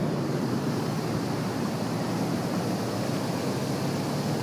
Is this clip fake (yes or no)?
no